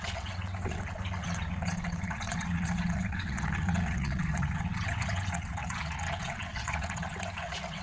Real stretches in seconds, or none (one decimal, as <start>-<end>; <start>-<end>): none